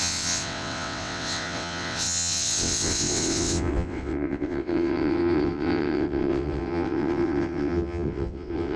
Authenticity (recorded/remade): remade